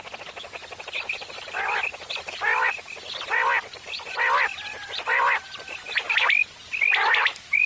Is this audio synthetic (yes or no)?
no